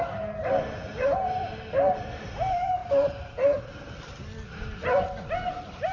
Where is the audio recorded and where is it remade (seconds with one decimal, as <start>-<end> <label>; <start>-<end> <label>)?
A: 0.0-5.9 recorded